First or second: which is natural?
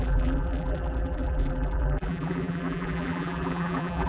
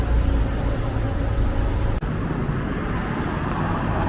second